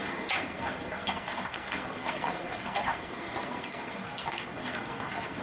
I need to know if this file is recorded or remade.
remade